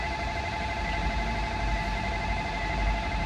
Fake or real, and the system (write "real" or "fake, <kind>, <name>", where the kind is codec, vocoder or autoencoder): real